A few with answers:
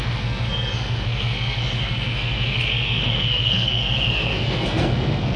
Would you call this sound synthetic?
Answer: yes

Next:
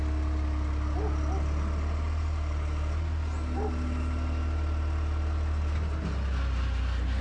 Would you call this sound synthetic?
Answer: no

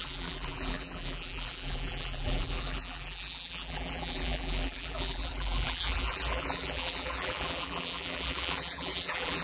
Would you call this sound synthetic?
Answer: yes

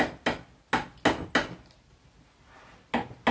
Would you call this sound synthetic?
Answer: no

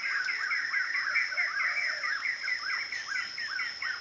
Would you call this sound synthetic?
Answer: no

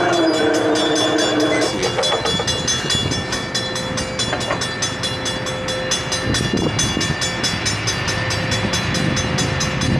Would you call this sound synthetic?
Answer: no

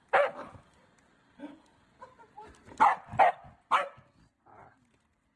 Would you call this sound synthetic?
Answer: no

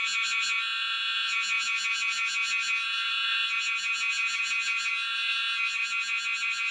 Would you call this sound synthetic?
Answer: yes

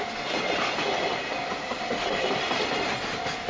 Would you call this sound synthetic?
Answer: no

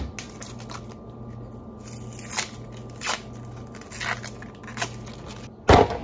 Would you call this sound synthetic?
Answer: no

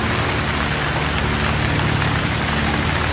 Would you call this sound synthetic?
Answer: no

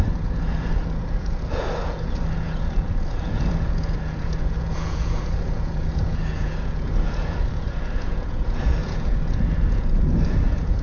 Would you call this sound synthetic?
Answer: yes